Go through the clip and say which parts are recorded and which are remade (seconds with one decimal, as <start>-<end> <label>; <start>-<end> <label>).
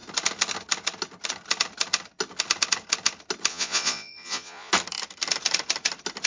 0.0-3.5 recorded; 3.5-4.7 remade; 4.7-6.3 recorded